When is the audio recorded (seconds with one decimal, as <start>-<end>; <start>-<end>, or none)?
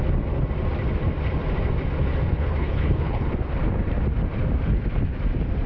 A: 0.0-2.3; 3.3-5.7